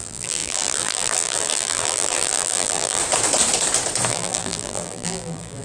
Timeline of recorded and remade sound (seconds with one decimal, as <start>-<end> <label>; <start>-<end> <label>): 0.0-3.0 remade; 3.0-4.1 recorded; 4.1-5.6 remade